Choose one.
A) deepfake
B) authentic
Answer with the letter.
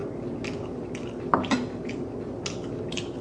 B